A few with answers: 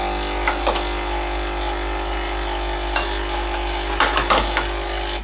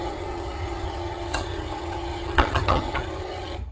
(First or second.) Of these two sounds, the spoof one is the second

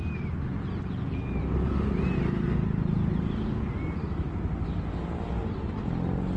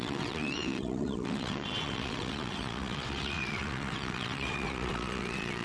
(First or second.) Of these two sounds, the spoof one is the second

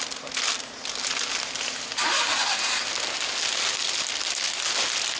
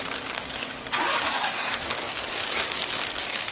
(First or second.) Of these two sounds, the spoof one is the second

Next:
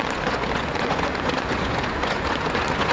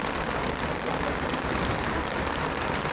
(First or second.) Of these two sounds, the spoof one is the first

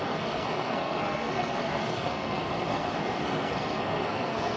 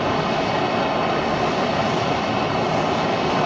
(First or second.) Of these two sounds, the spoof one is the first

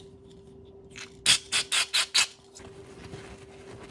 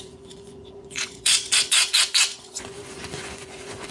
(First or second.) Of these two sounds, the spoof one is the second